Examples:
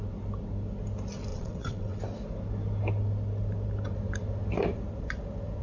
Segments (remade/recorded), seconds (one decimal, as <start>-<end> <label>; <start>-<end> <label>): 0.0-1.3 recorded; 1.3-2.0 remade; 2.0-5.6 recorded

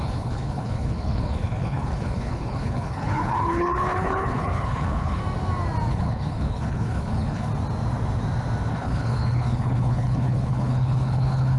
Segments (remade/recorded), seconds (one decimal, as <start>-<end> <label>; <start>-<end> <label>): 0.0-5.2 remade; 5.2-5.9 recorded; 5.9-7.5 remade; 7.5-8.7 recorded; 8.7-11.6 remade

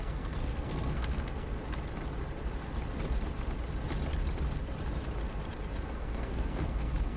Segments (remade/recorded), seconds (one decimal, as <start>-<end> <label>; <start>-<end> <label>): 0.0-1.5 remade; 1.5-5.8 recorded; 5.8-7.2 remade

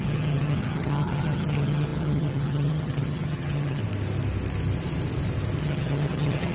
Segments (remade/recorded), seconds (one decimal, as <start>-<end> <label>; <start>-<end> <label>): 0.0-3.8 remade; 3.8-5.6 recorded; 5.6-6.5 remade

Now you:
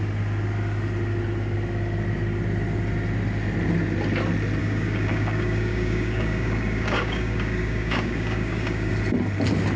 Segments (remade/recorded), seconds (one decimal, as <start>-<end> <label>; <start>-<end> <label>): 0.0-4.6 recorded; 4.6-8.9 remade; 8.9-9.8 recorded

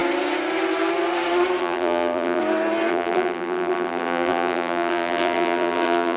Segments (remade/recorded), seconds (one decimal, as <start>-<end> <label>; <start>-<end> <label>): 0.0-1.6 recorded; 1.6-2.4 remade; 2.4-2.9 recorded; 2.9-6.2 remade